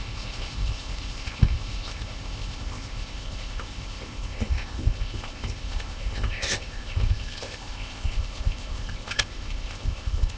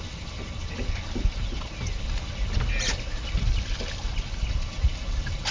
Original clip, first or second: second